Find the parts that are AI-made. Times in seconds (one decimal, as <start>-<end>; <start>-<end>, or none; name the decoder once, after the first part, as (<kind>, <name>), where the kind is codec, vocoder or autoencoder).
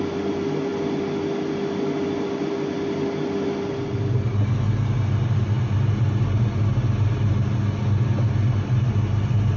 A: none